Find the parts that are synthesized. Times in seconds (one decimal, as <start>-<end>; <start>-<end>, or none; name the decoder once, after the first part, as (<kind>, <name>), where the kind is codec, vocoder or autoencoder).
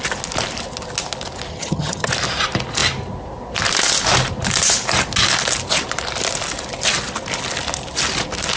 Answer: 1.5-2.1 (vocoder, HiFi-GAN)